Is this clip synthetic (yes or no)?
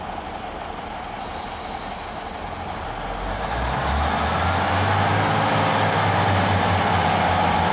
no